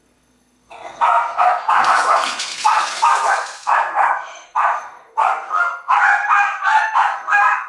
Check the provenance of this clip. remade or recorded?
remade